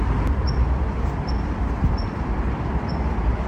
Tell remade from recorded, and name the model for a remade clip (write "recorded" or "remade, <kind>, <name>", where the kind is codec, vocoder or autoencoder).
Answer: recorded